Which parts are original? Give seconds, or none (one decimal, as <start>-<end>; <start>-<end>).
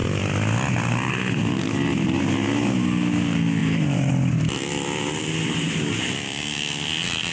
0.0-3.6; 4.1-7.3